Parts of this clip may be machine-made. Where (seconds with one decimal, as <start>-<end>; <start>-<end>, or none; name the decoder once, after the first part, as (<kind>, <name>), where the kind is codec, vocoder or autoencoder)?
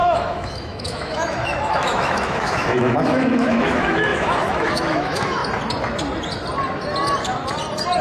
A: 0.0-5.4 (autoencoder, DAC-VAE)